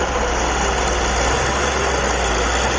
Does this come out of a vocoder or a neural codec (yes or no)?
no